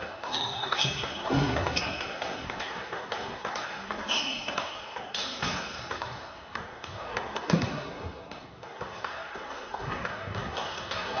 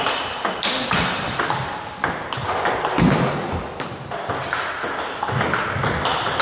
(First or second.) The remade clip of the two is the first